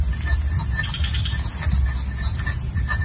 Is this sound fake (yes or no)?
no